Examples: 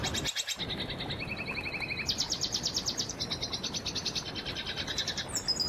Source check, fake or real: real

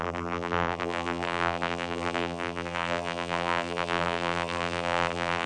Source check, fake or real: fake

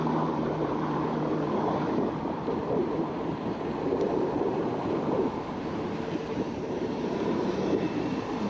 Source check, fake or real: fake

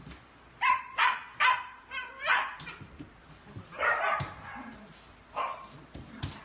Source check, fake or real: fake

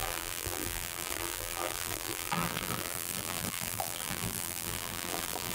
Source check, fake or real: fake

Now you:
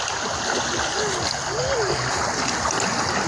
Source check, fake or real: real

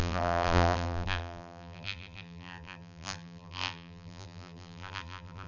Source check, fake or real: fake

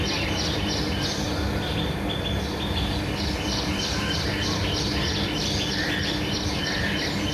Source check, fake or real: real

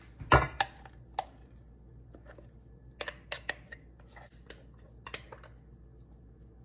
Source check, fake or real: real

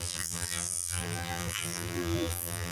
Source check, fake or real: fake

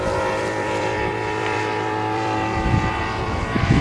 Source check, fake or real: fake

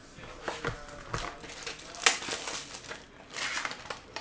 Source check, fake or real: real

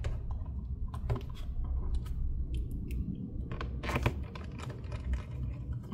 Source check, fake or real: real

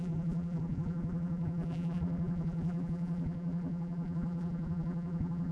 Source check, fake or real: fake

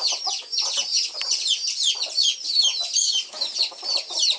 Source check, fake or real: real